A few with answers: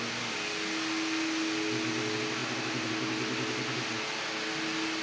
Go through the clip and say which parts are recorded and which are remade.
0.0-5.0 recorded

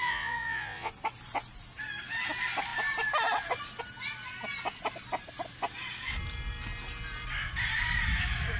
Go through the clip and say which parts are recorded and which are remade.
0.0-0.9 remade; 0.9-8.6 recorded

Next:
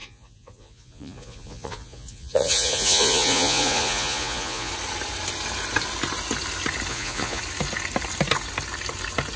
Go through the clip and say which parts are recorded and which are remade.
0.0-4.7 remade; 4.7-6.9 recorded; 6.9-7.4 remade; 7.4-9.4 recorded

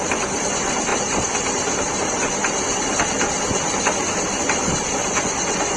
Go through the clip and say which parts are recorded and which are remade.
0.0-5.0 recorded; 5.0-5.8 remade

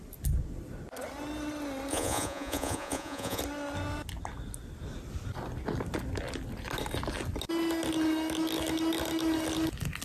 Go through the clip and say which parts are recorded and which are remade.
0.0-1.9 recorded; 1.9-3.4 remade; 3.4-10.0 recorded

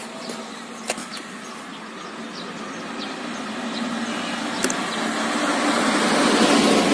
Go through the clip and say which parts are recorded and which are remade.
0.0-6.9 recorded